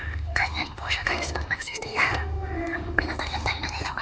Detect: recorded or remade remade